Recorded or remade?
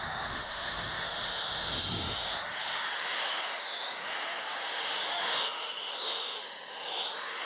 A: remade